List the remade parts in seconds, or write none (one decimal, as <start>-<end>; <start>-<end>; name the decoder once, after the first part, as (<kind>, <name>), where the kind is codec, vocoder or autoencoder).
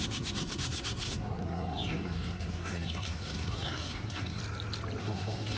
0.0-4.4 (codec, SNAC); 5.0-5.6